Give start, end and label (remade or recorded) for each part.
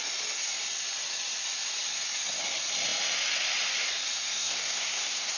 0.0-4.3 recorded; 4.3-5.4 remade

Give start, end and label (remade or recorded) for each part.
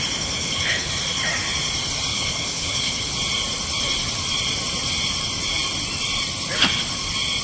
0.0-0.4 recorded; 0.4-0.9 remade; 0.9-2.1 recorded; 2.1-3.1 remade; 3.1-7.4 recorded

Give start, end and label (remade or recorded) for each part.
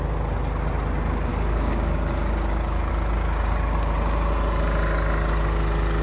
0.0-1.3 recorded; 1.3-2.9 remade; 2.9-6.0 recorded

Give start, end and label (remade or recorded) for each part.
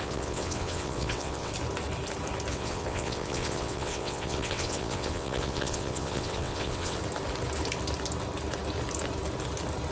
0.0-1.5 remade; 1.5-2.5 recorded; 2.5-7.0 remade; 7.0-9.9 recorded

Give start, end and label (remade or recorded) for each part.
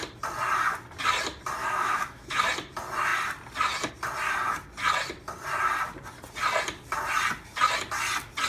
0.0-1.6 recorded; 1.6-2.4 remade; 2.4-8.5 recorded